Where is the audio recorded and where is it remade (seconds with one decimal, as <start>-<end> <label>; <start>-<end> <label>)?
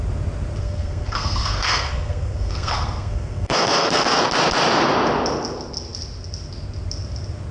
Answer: 0.0-0.6 recorded; 0.6-4.2 remade; 4.2-7.5 recorded